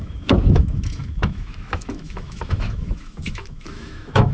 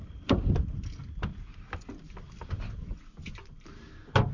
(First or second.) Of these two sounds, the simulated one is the first